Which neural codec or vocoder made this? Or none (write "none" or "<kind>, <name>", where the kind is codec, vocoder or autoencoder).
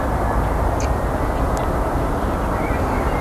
none